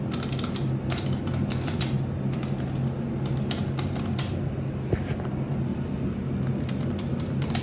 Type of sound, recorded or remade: recorded